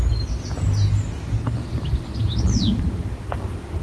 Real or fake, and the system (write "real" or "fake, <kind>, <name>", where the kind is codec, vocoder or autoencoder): real